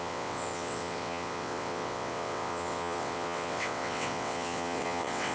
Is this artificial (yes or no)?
yes